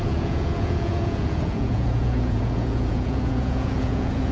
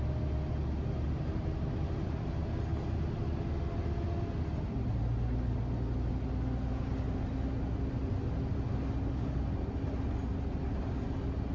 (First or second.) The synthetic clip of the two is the first